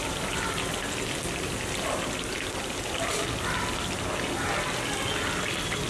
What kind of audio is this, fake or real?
real